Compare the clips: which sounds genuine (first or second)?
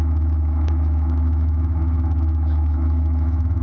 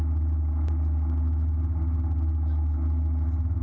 second